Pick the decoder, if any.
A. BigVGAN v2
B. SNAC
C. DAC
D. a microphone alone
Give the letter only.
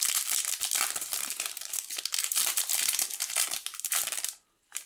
A